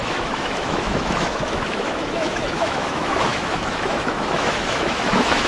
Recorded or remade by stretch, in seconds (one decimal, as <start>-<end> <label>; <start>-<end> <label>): 0.0-5.5 remade